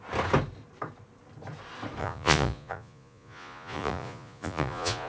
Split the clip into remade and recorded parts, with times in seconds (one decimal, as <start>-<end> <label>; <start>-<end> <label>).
0.0-2.0 recorded; 2.0-5.1 remade